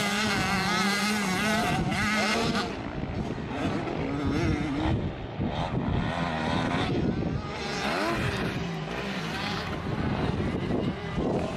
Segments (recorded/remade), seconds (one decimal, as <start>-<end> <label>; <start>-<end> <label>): 0.0-11.6 recorded